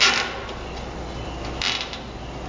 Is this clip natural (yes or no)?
yes